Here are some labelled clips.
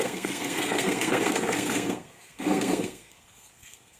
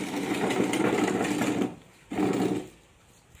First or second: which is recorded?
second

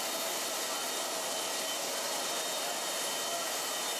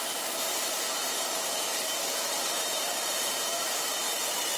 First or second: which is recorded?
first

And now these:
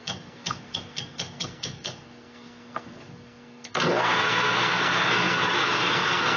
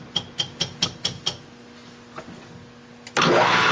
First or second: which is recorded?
second